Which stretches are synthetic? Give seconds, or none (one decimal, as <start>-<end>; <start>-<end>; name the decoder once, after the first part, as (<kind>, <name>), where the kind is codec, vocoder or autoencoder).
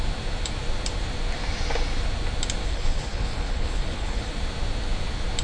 2.6-4.3 (codec, HILCodec)